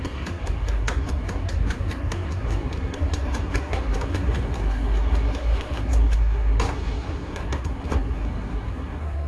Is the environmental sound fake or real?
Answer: fake